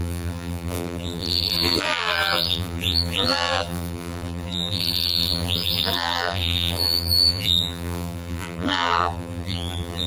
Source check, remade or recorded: remade